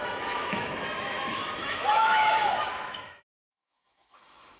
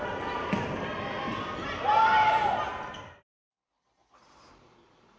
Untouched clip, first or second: second